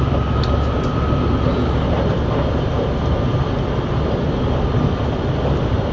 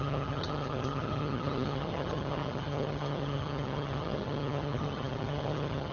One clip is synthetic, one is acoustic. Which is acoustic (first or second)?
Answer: first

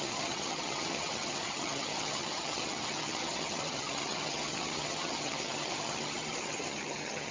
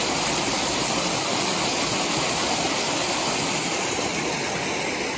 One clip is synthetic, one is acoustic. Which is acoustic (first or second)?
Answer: second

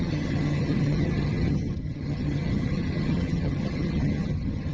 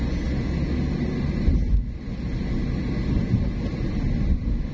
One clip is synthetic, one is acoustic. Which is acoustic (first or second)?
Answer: second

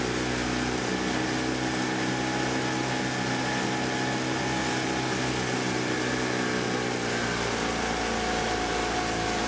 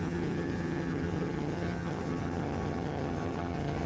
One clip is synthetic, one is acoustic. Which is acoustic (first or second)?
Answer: first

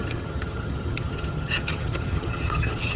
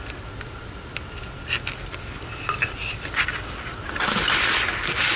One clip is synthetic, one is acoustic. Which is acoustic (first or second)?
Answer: second